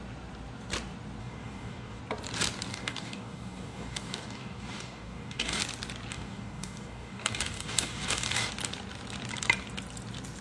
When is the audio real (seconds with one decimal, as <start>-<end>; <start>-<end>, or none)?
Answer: 0.0-1.2; 2.0-2.7; 5.6-6.1; 8.5-10.4